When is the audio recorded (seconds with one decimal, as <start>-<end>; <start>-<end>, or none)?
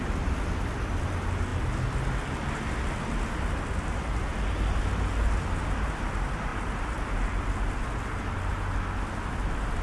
0.0-9.8